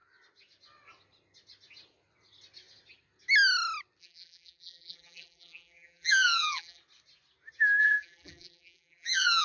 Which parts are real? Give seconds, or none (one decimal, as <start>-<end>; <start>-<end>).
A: 0.0-4.0; 6.8-7.8